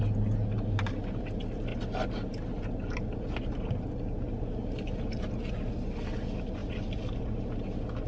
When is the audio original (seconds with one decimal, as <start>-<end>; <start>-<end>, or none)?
0.0-8.1